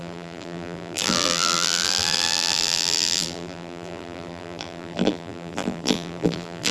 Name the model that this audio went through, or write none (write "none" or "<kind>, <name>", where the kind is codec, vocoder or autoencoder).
vocoder, BigVGAN v2